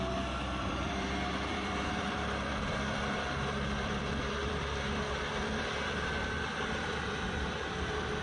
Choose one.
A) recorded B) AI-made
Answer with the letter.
B